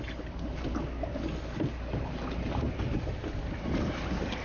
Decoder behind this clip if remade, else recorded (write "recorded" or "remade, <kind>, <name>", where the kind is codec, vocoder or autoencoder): recorded